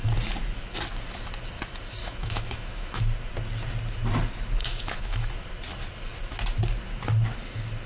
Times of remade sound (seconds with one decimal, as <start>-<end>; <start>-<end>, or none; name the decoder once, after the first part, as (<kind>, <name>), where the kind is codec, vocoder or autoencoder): 2.0-3.0 (autoencoder, DAC-VAE); 4.6-5.3